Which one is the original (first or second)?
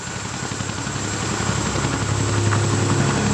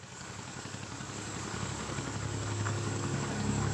first